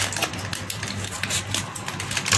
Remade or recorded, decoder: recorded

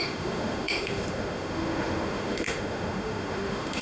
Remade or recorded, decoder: remade, autoencoder, DAC-VAE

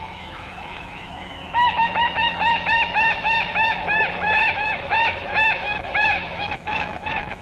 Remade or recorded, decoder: remade, autoencoder, DAC-VAE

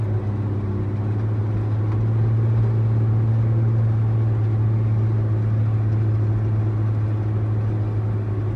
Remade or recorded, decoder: recorded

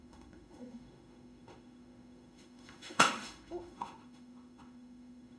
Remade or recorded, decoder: remade, autoencoder, DAC-VAE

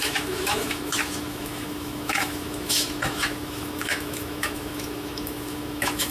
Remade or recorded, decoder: remade, autoencoder, DAC-VAE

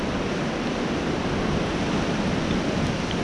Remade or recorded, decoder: recorded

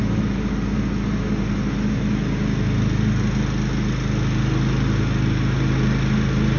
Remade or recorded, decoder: recorded